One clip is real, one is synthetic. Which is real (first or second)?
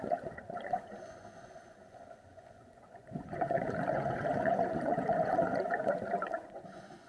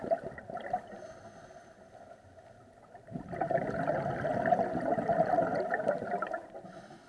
second